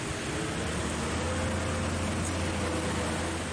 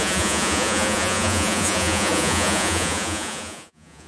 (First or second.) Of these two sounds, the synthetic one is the second